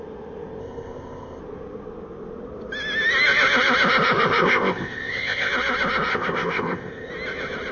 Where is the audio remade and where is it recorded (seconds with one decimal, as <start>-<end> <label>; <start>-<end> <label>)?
0.0-0.6 recorded; 0.6-1.4 remade; 1.4-4.4 recorded; 4.4-5.5 remade; 5.5-6.1 recorded; 6.1-7.1 remade; 7.1-7.7 recorded